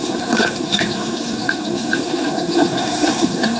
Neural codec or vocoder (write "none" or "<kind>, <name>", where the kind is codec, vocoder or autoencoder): codec, SNAC